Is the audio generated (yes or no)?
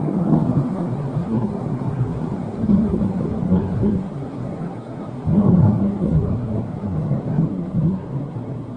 yes